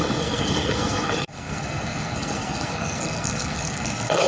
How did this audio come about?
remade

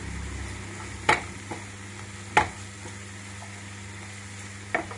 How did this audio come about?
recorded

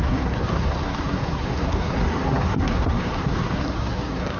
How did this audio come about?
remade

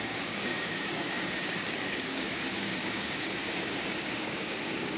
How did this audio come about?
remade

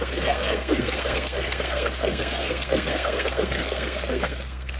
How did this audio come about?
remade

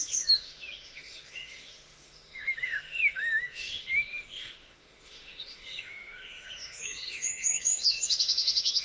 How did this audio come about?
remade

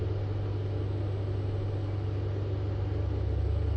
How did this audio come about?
recorded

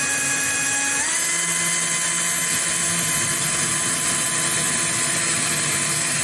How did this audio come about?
recorded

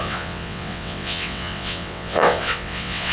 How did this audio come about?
remade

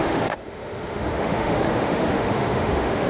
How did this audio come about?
remade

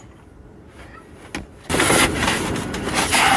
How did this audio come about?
recorded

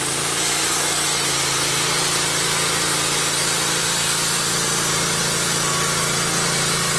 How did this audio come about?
recorded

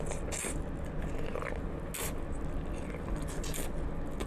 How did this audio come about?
recorded